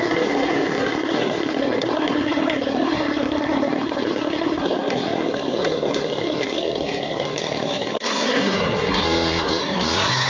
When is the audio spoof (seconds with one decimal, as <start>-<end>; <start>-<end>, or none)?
0.0-10.3